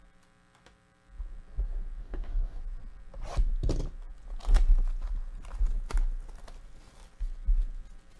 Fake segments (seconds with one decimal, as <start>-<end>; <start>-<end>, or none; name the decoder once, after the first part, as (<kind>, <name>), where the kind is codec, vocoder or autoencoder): 2.0-2.6 (codec, DAC)